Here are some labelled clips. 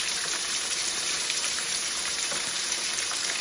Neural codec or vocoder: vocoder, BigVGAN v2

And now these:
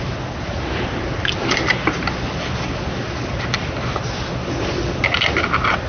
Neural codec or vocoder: none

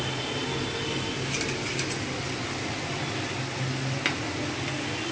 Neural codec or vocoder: none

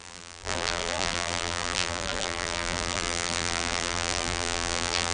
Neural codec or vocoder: vocoder, BigVGAN v2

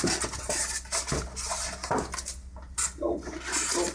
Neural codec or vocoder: none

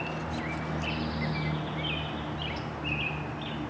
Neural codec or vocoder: none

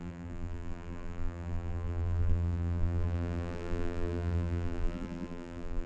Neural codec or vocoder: vocoder, BigVGAN v2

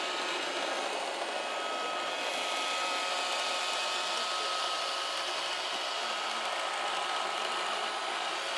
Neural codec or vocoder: none